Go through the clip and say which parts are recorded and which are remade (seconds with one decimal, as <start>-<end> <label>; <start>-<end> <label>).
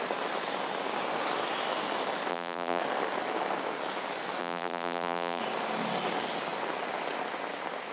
0.0-2.3 recorded; 2.3-2.8 remade; 2.8-4.4 recorded; 4.4-5.4 remade; 5.4-7.9 recorded